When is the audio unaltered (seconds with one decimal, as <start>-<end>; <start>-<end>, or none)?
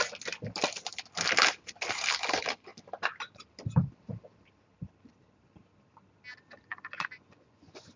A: 0.0-6.7